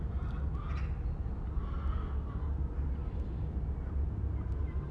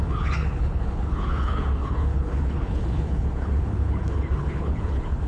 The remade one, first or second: second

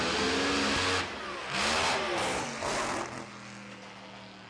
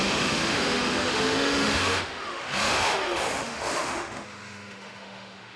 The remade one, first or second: second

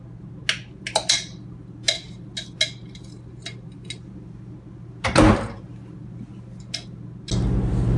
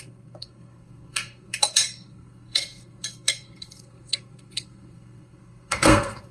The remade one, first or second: second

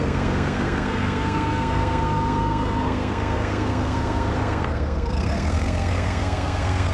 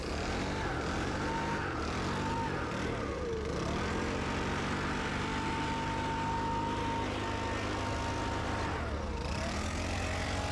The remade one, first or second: first